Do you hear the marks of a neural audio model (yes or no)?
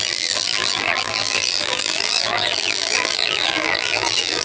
yes